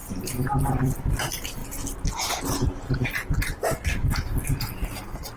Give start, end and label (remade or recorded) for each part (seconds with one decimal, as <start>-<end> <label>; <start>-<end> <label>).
0.0-5.4 recorded